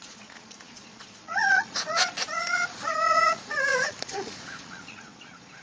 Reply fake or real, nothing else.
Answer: fake